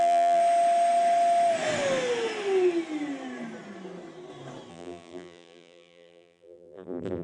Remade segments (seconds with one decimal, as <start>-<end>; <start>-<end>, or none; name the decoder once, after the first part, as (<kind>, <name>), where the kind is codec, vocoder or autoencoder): 0.0-0.4 (vocoder, BigVGAN v2); 4.7-7.2